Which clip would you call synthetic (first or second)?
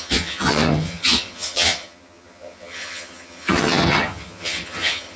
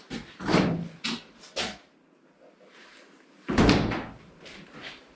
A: first